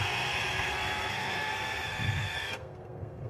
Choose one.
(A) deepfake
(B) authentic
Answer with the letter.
A